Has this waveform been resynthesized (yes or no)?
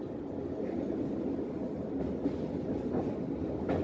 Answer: no